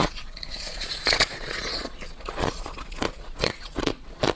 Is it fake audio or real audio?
fake